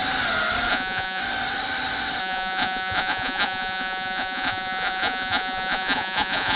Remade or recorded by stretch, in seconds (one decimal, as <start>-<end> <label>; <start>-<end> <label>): 0.0-0.7 recorded; 0.7-1.2 remade; 1.2-2.2 recorded; 2.2-6.6 remade